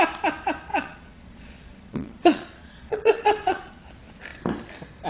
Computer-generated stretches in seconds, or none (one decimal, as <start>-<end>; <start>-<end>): 0.7-3.8

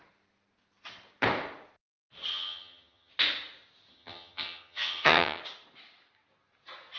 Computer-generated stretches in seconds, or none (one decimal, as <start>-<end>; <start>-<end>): 2.3-3.1; 3.9-5.4

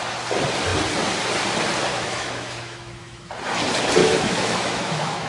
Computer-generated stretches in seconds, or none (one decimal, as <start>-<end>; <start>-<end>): 1.9-3.3; 4.0-5.3

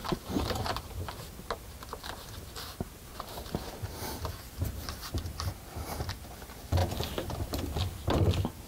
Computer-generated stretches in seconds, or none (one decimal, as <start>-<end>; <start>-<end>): 0.0-1.3; 3.1-6.1

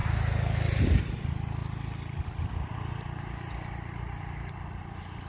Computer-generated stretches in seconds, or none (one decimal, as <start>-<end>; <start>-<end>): none

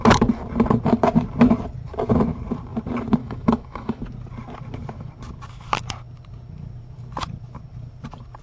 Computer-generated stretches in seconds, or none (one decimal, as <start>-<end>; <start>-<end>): 3.2-4.0